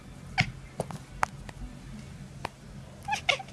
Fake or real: real